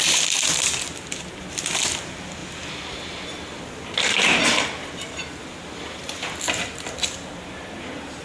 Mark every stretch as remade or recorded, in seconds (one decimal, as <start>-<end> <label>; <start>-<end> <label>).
0.0-8.2 recorded